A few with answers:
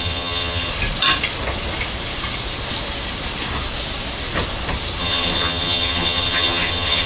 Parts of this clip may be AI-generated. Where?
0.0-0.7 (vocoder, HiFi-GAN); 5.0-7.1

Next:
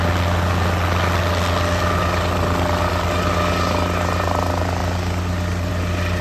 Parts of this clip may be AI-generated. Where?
none